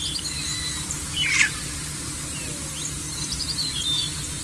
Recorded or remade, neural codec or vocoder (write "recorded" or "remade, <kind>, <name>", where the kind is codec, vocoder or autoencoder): recorded